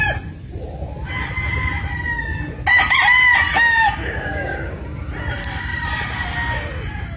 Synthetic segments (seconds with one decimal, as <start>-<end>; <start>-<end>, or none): 3.5-4.8